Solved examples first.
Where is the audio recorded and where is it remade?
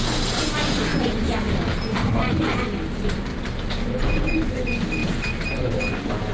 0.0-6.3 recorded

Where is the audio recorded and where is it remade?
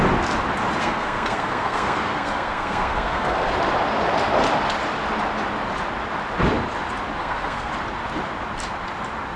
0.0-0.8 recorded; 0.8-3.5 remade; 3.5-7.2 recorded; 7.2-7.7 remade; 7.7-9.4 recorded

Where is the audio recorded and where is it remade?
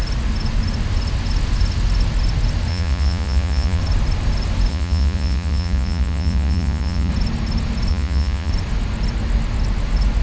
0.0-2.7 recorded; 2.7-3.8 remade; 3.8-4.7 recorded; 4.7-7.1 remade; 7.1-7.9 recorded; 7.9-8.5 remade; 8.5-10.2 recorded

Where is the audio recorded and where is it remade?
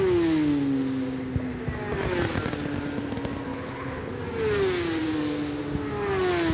0.0-3.5 recorded; 3.5-4.1 remade; 4.1-6.5 recorded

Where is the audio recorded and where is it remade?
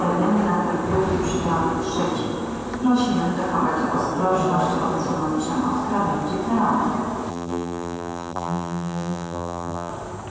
0.0-7.3 recorded; 7.3-9.9 remade; 9.9-10.3 recorded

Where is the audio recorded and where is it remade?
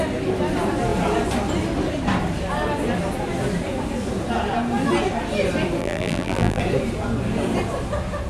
0.0-5.8 recorded; 5.8-6.6 remade; 6.6-8.3 recorded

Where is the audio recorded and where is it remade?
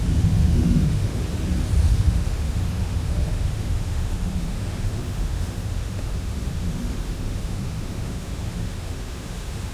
0.0-1.2 remade; 1.2-1.9 recorded; 1.9-9.7 remade